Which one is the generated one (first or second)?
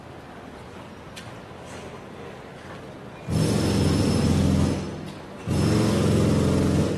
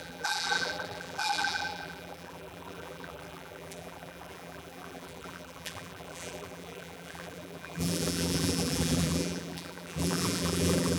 second